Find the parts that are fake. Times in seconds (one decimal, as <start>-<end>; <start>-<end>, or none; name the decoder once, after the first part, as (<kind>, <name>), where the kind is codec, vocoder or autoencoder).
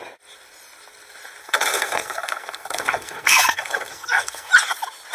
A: 1.4-4.5 (codec, SNAC)